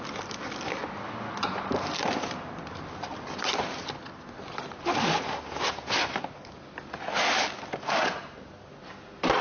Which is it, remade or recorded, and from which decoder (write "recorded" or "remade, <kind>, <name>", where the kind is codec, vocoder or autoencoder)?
recorded